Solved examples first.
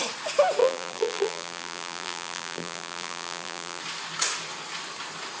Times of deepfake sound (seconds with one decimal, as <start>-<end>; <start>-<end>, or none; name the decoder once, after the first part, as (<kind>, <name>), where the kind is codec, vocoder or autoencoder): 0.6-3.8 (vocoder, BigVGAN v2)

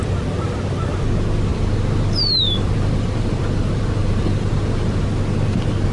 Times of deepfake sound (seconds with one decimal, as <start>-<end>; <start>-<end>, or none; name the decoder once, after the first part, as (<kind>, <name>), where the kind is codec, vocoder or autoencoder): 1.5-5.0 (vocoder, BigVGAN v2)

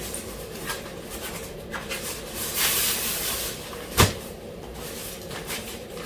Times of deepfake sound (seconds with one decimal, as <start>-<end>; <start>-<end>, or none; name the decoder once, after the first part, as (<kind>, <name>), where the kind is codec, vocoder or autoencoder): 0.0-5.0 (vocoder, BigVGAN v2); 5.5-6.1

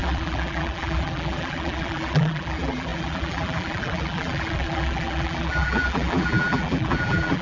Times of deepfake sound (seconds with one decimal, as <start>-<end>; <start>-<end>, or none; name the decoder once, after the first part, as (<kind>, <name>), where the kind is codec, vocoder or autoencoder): 0.0-7.4 (vocoder, BigVGAN v2)